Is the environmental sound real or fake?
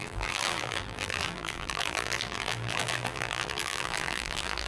fake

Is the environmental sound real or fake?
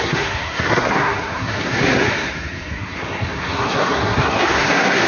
fake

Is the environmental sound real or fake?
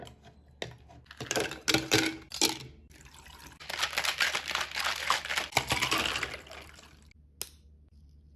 real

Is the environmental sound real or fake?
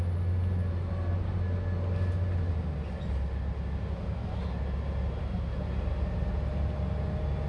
real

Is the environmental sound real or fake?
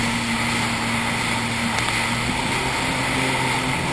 real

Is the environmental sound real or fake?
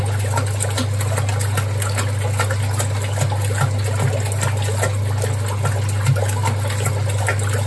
real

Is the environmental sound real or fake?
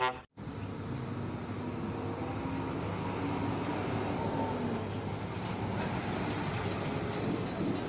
real